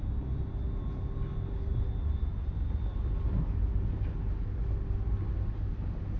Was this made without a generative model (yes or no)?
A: yes